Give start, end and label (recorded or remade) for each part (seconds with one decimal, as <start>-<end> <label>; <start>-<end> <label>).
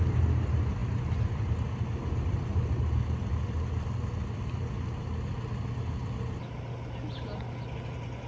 0.0-8.3 recorded